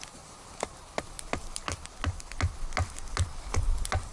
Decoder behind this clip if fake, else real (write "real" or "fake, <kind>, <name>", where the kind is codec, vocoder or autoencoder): real